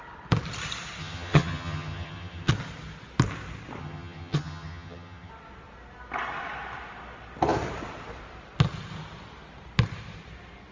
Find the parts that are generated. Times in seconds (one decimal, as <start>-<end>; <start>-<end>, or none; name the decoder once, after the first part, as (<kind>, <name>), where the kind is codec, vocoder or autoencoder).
1.0-2.5 (vocoder, HiFi-GAN); 3.8-5.3